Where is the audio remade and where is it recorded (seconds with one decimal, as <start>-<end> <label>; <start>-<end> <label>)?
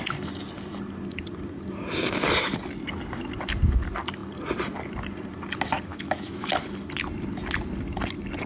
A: 0.0-5.9 recorded; 5.9-6.5 remade; 6.5-8.5 recorded